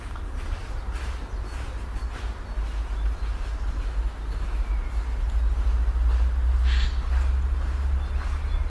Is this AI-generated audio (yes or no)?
no